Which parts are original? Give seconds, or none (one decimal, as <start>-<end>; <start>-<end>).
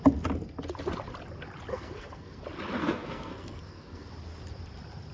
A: 0.0-1.7; 2.4-2.8; 4.1-5.1